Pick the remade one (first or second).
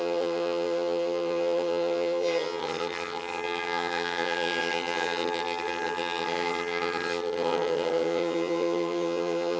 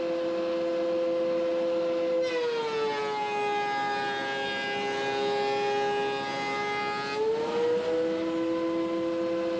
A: first